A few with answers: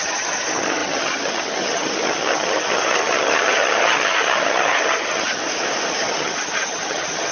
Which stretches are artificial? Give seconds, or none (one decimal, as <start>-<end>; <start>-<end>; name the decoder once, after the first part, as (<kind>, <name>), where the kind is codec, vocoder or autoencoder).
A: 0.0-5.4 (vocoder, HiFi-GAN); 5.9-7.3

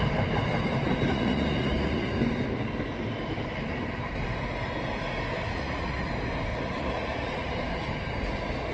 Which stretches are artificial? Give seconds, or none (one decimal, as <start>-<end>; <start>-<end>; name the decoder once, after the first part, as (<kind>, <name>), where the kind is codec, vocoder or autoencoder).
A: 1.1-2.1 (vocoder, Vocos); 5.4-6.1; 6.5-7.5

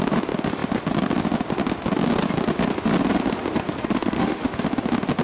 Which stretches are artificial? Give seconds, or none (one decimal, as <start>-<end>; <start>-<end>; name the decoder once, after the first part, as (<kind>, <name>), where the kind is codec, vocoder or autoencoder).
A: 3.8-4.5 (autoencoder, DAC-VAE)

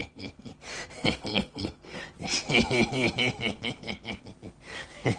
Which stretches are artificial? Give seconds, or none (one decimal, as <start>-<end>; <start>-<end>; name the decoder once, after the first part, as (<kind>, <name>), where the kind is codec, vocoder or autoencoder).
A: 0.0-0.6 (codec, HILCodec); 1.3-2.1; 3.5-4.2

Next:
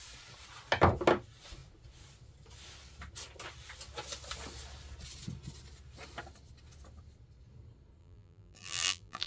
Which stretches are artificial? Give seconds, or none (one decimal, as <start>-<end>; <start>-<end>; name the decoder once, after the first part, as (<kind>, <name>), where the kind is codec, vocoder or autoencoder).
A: 8.0-9.3 (vocoder, BigVGAN v2)

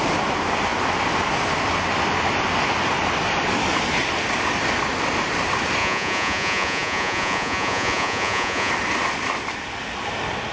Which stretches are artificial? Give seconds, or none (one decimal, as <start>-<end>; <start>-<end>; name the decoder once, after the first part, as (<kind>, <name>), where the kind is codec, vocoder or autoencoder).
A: 5.8-8.7 (vocoder, Vocos)